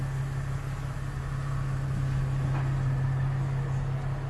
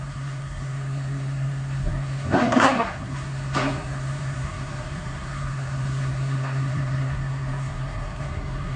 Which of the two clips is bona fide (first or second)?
first